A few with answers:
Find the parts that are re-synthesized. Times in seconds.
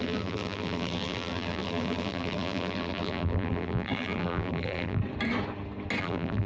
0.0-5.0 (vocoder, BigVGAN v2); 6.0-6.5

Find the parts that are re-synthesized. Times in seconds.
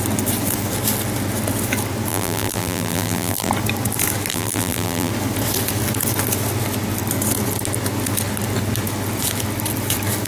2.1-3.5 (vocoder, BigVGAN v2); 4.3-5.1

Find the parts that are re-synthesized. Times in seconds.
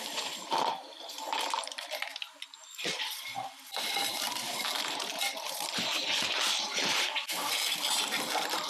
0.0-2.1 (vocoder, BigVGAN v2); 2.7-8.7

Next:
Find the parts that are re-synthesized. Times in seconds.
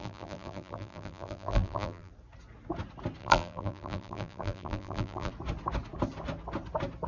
0.0-2.1 (vocoder, BigVGAN v2); 3.2-5.3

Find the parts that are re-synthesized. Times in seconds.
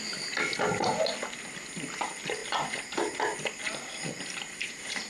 0.0-0.9 (vocoder, BigVGAN v2); 1.4-2.4; 4.2-5.1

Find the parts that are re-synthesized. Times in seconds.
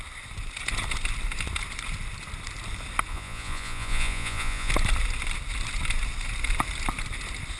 3.1-4.7 (vocoder, Vocos)